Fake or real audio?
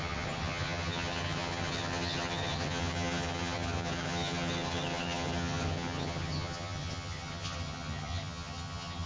fake